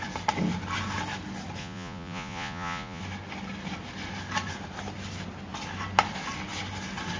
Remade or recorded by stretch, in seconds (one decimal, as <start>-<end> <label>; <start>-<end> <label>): 0.0-1.6 recorded; 1.6-3.0 remade; 3.0-7.2 recorded